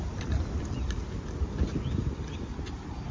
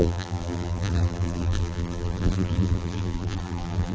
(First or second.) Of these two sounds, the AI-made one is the second